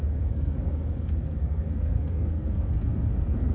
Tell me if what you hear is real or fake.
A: fake